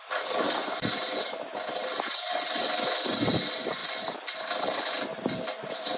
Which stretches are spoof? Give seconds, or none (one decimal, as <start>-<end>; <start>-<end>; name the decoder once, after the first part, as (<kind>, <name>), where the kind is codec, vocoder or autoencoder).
none